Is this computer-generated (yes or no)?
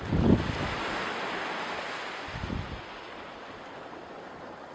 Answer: no